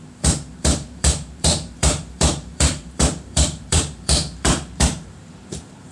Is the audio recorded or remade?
remade